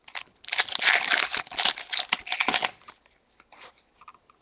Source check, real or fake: real